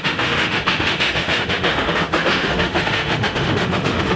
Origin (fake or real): fake